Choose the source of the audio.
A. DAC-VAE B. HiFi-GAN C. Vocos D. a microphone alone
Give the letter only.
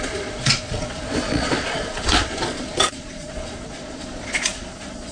C